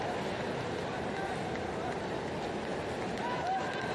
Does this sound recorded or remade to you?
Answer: recorded